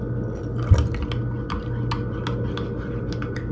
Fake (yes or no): no